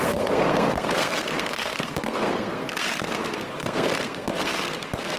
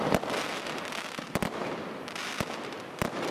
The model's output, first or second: first